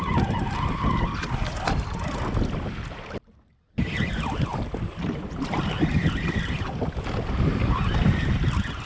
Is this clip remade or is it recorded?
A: recorded